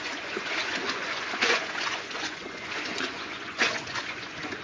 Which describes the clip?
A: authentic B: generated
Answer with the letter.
B